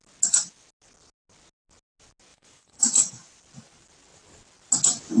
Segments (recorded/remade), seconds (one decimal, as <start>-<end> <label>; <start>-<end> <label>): 0.0-2.3 recorded; 2.3-3.1 remade; 3.1-5.2 recorded